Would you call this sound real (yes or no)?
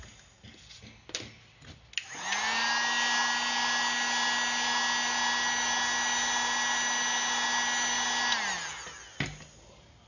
yes